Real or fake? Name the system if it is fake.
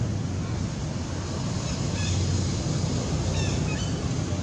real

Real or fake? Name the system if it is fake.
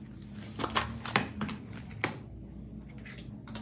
real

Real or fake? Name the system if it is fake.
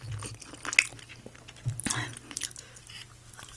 real